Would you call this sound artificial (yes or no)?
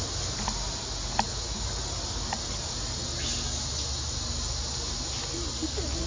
no